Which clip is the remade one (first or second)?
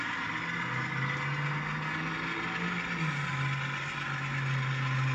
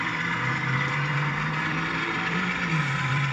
second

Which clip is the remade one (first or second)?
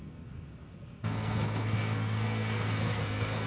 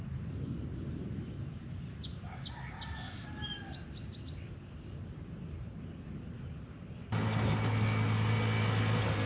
first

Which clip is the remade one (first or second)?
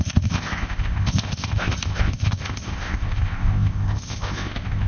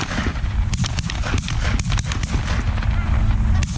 first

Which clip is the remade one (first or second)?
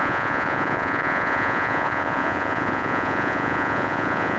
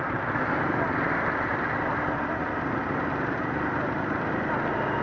first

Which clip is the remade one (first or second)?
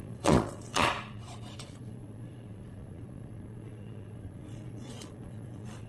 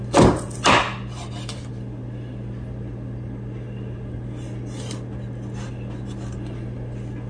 first